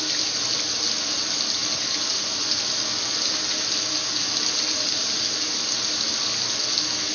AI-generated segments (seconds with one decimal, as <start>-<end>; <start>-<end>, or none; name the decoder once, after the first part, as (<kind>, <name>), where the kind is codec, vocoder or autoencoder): none